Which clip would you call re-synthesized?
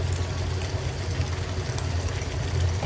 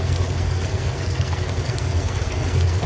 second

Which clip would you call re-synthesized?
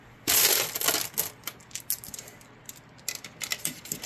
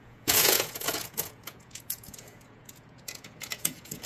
second